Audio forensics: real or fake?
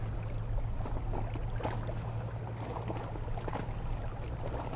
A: real